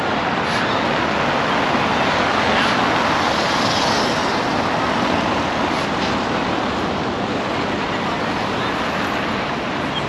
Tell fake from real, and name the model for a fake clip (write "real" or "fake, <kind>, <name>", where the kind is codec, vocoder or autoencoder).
real